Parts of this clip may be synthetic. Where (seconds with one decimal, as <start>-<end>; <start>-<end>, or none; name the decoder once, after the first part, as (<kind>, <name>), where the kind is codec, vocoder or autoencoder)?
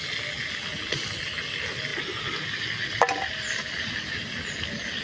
none